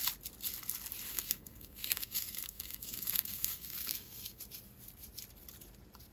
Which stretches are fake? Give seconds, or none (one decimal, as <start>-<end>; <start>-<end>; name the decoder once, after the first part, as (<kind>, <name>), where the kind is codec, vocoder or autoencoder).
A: 1.1-4.4 (codec, SNAC)